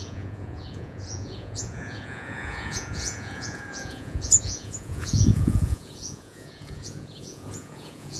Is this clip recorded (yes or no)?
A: no